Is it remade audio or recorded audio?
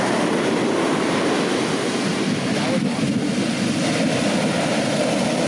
recorded